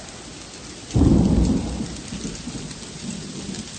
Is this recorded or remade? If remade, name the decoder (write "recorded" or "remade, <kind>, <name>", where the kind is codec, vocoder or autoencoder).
recorded